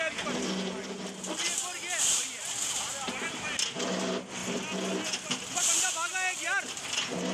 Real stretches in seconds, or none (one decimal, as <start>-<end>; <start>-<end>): 0.0-7.3